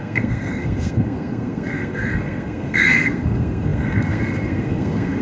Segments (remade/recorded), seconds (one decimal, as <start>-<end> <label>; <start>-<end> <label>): 0.0-5.2 remade